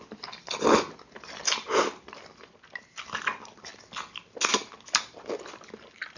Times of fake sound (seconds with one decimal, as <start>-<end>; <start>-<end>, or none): none